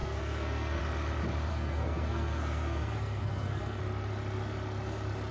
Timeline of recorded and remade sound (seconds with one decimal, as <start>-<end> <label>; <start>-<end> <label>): 0.0-0.8 remade; 0.8-1.5 recorded; 1.5-3.8 remade; 3.8-5.3 recorded